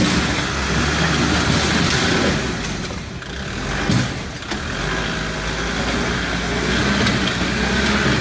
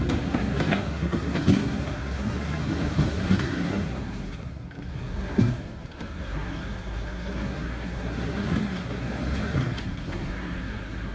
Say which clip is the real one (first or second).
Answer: first